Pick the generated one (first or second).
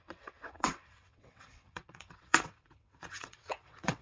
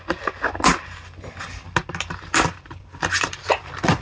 first